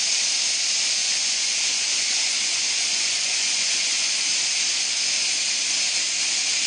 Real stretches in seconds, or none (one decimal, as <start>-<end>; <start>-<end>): 0.0-1.0; 4.1-6.7